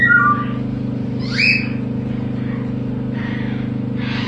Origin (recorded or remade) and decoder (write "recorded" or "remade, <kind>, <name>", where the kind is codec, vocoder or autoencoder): recorded